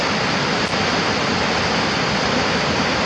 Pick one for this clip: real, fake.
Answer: real